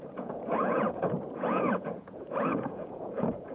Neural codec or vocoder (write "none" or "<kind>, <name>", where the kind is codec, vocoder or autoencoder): vocoder, Vocos